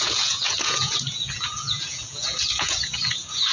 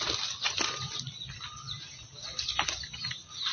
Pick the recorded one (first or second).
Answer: second